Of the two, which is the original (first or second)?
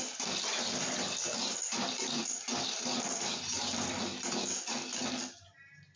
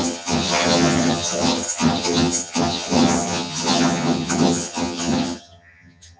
first